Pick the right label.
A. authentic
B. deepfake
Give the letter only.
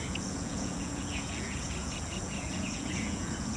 B